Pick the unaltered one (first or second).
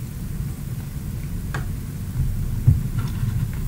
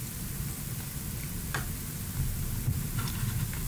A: first